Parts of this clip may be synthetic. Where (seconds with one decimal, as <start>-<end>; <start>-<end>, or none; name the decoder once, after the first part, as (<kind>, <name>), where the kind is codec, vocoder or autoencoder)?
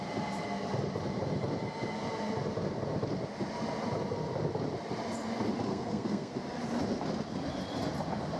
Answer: 5.7-6.3 (codec, SNAC)